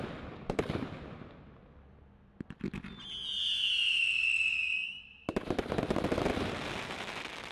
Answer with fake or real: real